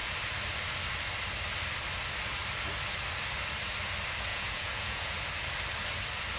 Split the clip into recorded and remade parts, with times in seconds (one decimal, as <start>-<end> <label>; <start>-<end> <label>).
0.0-4.3 recorded; 4.3-5.1 remade; 5.1-6.4 recorded